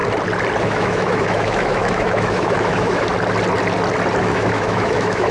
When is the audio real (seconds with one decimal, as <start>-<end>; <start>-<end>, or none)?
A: 0.0-0.6; 3.1-4.2